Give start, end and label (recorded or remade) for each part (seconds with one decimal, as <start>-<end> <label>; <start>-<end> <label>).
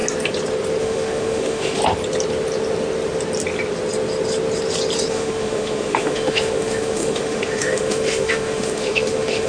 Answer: 0.0-0.8 recorded; 0.8-1.8 remade; 1.8-5.1 recorded; 5.1-9.5 remade